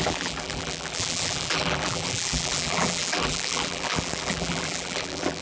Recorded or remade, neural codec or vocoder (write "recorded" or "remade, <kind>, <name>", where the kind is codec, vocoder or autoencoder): remade, vocoder, BigVGAN v2